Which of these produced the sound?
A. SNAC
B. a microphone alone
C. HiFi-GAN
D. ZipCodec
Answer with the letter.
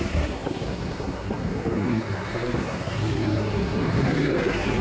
A